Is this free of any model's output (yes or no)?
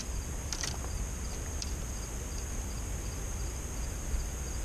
yes